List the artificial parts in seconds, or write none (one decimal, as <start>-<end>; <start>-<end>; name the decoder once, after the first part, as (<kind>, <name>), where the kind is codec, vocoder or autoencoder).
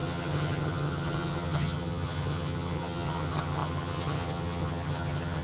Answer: 0.0-5.4 (vocoder, HiFi-GAN)